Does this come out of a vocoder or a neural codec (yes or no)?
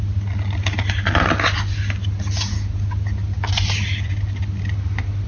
no